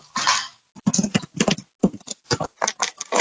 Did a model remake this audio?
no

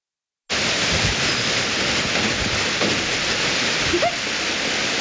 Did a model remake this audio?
no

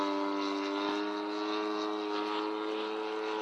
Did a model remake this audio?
no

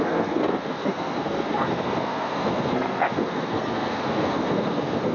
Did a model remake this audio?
yes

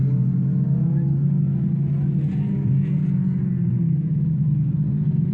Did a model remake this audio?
no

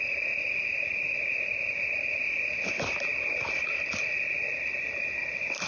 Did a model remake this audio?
no